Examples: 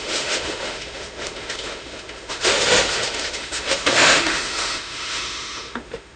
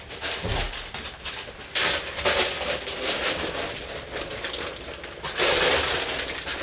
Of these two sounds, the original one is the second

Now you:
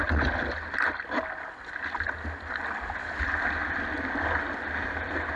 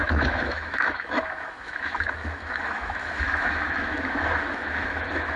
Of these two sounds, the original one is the first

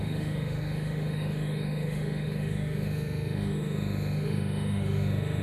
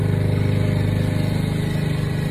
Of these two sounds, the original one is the second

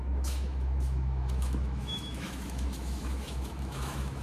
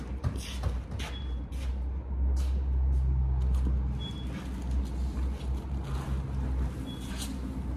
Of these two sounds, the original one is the second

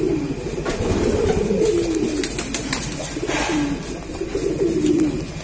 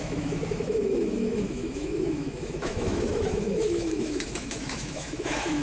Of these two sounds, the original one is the first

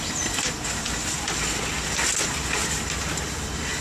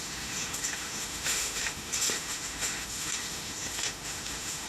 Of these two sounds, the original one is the first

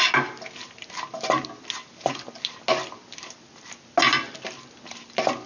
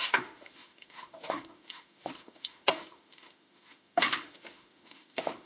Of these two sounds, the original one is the first